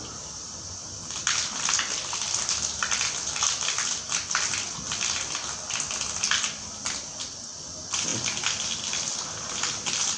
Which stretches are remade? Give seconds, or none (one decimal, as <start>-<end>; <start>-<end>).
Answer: none